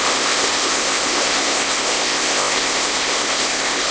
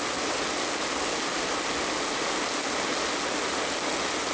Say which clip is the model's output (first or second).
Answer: first